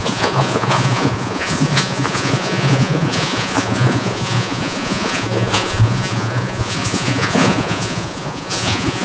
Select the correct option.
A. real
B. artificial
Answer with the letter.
B